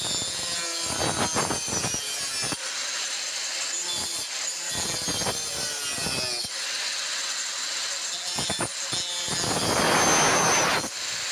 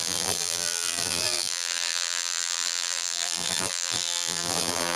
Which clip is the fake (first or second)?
second